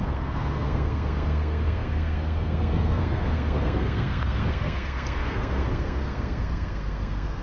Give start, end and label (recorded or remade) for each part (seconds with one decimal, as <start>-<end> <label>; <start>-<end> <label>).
0.0-7.4 remade